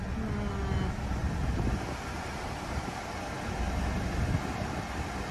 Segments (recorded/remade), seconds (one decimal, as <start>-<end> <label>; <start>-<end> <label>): 0.0-5.3 recorded